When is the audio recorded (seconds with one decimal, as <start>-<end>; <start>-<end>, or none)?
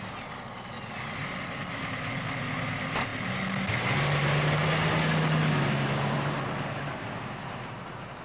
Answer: 0.0-8.2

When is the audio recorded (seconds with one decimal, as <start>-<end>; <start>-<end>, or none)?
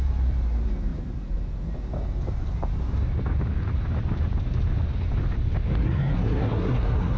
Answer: 0.0-5.8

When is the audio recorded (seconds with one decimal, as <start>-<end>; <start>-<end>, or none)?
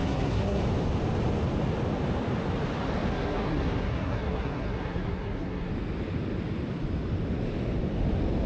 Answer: 0.6-3.1; 5.7-8.5